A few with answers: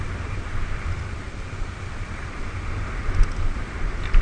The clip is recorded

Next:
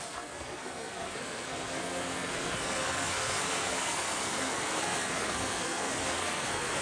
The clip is remade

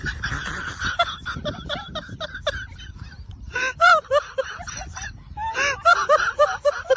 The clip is recorded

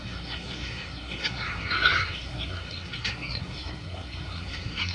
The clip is remade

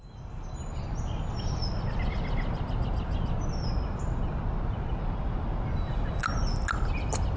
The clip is recorded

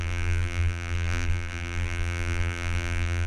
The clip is remade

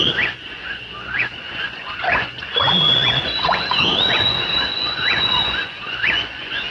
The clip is remade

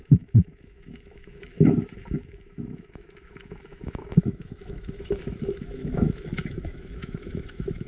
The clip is remade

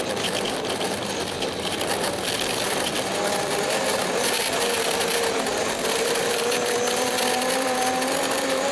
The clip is remade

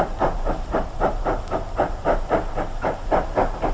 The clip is recorded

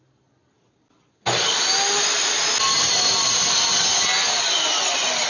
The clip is recorded